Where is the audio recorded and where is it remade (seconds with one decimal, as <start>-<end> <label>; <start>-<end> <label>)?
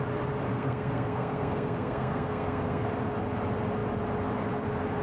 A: 0.0-0.5 recorded; 0.5-2.9 remade; 2.9-5.0 recorded